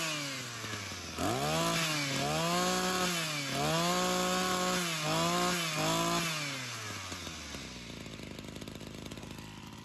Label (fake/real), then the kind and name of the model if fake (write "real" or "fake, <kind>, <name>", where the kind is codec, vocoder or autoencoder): real